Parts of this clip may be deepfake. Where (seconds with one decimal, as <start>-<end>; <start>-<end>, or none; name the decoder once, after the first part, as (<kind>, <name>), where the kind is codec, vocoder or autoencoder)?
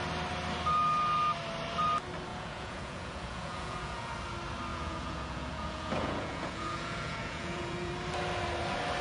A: 2.3-4.1 (vocoder, Vocos); 4.7-7.9